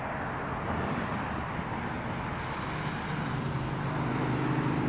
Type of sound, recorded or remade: recorded